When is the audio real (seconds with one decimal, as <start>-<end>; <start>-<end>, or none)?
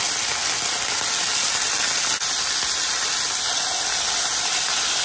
0.0-5.0